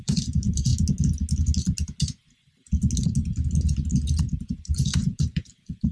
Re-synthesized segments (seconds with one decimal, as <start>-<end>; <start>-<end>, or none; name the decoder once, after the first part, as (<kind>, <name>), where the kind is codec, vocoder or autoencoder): 0.0-0.7 (vocoder, BigVGAN v2); 4.2-5.9